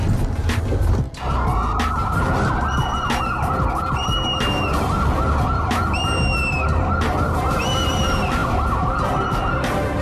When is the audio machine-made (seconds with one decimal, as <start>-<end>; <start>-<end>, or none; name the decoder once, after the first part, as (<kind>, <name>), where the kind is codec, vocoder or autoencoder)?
none